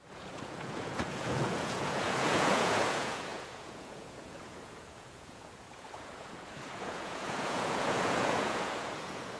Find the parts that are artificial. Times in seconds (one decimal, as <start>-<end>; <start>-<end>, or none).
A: 0.0-9.4